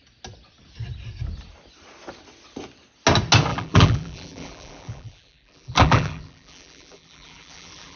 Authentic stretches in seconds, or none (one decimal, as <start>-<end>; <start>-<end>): 0.0-3.5